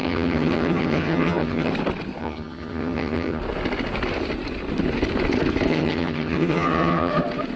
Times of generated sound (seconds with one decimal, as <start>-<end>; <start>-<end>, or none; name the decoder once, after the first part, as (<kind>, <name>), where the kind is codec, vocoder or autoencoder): 0.0-1.7 (vocoder, HiFi-GAN); 2.2-3.4; 5.7-7.1